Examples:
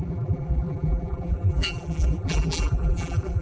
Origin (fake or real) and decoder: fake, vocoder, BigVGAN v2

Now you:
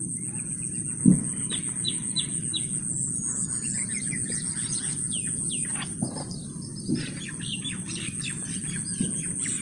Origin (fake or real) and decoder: real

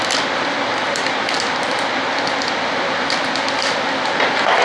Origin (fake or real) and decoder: fake, vocoder, BigVGAN v2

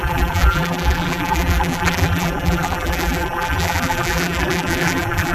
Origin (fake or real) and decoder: fake, vocoder, BigVGAN v2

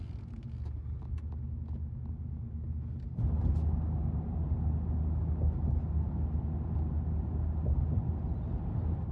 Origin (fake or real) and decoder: real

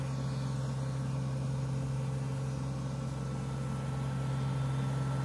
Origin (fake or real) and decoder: real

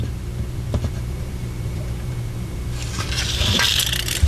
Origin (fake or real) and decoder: fake, vocoder, BigVGAN v2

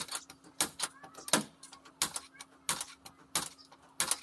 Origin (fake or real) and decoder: real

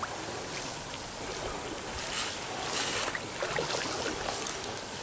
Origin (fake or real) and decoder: real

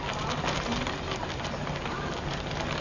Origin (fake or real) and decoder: fake, vocoder, BigVGAN v2